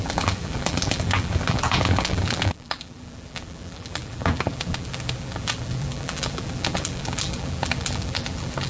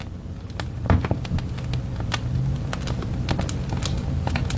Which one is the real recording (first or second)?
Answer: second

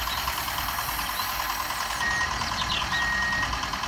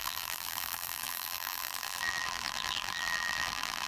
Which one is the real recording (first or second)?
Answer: first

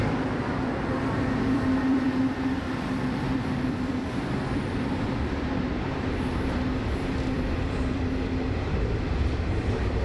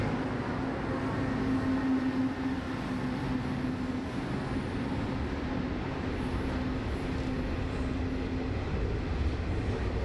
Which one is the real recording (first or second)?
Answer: second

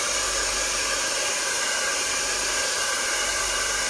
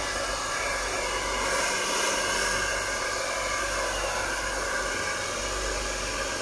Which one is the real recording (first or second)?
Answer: second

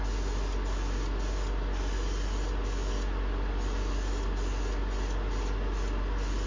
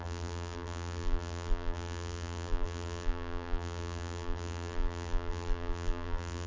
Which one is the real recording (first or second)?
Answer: first